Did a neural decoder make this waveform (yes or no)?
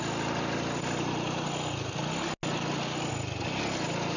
no